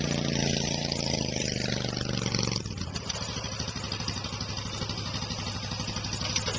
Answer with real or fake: real